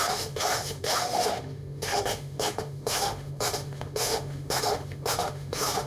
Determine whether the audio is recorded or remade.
remade